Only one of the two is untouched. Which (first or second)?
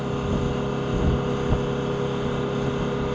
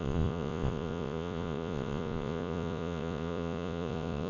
first